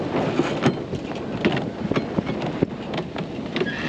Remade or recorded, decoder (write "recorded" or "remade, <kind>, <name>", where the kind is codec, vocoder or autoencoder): recorded